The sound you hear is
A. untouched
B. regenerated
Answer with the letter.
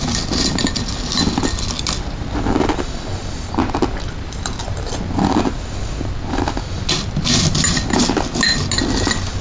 A